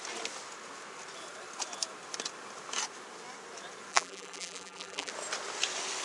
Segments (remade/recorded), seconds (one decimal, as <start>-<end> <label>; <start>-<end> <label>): 0.0-3.9 recorded; 3.9-5.1 remade; 5.1-6.0 recorded